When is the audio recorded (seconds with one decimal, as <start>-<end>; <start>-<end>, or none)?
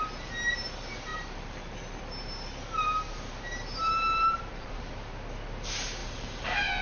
0.0-1.1; 2.0-3.8; 4.9-6.0